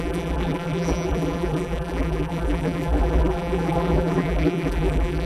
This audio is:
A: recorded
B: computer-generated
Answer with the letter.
B